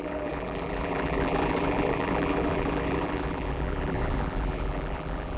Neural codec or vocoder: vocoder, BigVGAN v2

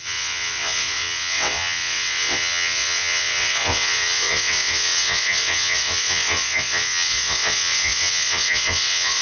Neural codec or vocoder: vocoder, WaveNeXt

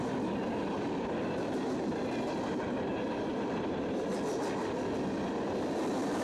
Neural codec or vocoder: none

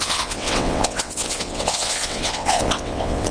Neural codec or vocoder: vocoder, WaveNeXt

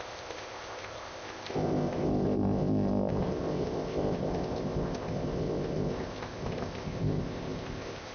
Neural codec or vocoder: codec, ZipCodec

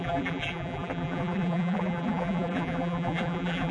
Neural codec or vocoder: vocoder, BigVGAN v2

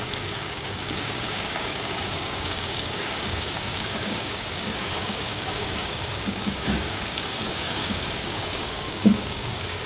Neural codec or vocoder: codec, DAC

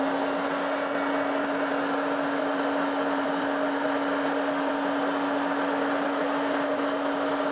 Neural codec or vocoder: none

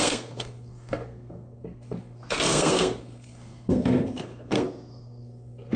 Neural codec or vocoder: codec, SNAC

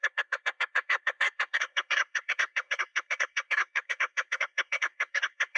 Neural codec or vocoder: codec, SNAC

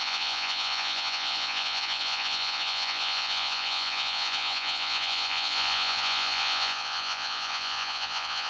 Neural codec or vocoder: vocoder, Vocos